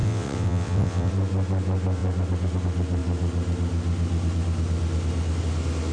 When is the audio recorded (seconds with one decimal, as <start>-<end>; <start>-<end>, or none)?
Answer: 1.1-5.9